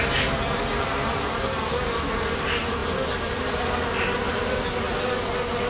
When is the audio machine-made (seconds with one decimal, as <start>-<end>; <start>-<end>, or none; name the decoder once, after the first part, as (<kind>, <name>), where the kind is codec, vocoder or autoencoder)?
none